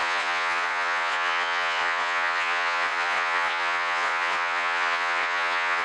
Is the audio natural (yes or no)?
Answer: no